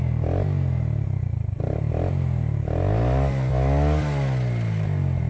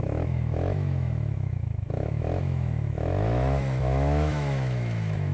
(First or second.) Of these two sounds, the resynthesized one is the second